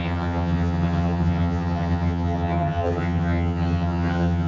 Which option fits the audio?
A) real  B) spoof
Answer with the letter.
B